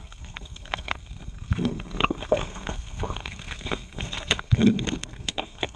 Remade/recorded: remade